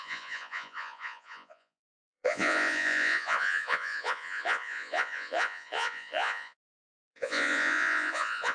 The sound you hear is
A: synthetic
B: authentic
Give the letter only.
A